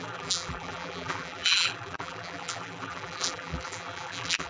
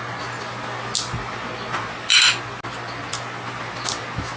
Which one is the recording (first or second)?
second